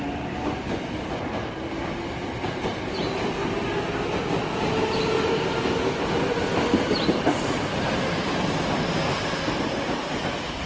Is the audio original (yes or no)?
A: yes